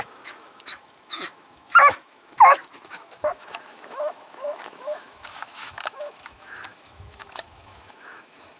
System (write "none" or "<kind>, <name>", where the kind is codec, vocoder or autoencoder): autoencoder, DAC-VAE